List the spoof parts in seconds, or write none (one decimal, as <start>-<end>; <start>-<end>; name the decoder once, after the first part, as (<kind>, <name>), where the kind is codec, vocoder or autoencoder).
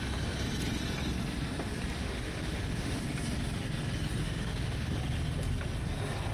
2.0-3.0 (autoencoder, DAC-VAE); 4.2-4.9